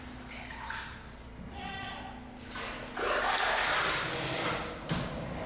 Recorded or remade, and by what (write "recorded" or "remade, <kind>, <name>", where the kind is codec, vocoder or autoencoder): recorded